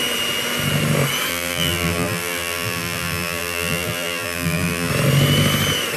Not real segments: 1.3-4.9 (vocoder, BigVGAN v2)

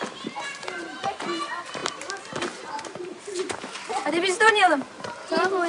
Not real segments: 0.0-5.7 (vocoder, BigVGAN v2)